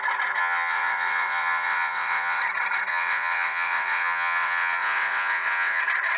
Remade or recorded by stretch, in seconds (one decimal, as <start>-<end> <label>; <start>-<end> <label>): 0.0-0.4 recorded; 0.4-2.4 remade; 2.4-2.9 recorded; 2.9-5.8 remade; 5.8-6.2 recorded